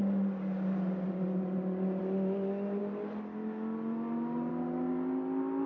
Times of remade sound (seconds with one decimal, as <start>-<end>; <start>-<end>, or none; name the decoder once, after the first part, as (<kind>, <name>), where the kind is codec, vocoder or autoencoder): 0.0-2.0 (vocoder, BigVGAN v2)